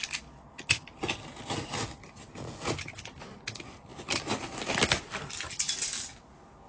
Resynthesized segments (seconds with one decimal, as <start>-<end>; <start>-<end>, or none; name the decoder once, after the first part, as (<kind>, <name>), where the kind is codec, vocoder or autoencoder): none